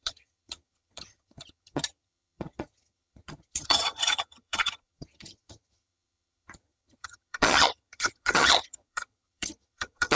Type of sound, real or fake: fake